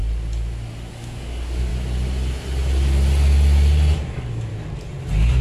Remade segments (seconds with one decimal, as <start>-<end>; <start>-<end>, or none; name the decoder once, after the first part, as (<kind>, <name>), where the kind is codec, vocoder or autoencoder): 0.9-1.7 (codec, DAC); 4.1-4.5